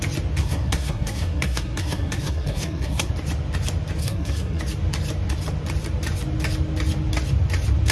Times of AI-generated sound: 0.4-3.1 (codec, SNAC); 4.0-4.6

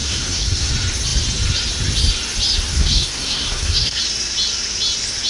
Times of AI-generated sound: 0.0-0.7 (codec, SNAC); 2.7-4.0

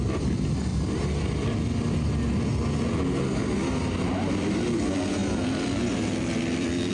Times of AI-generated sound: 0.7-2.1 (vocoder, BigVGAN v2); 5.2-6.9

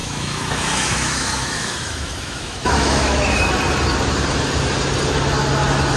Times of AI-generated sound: 0.0-3.6 (autoencoder, DAC-VAE)

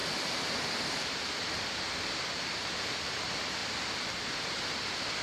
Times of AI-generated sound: 0.8-1.4 (vocoder, BigVGAN v2); 2.5-3.6; 4.4-5.2

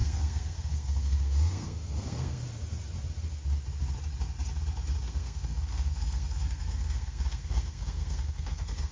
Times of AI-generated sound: 0.0-2.4 (codec, SNAC); 5.0-8.9

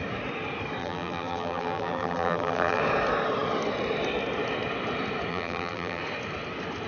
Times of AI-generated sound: 0.8-2.8 (vocoder, BigVGAN v2); 5.3-6.0

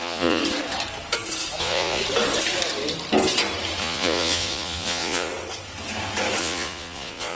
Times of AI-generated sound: 0.0-0.4 (vocoder, Vocos); 1.6-2.0; 3.8-5.3; 6.4-7.4